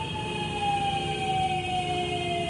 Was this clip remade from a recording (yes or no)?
no